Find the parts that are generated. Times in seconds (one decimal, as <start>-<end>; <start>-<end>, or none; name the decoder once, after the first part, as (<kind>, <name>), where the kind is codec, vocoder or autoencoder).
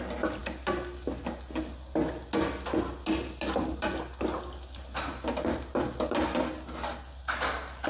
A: none